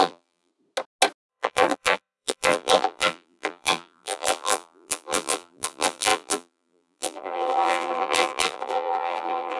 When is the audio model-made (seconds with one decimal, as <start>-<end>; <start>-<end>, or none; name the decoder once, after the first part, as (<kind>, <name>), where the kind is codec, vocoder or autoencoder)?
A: 0.0-0.5 (vocoder, BigVGAN v2); 1.3-9.6